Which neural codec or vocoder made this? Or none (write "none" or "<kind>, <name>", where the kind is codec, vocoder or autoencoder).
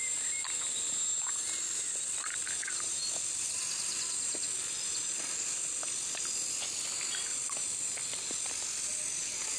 none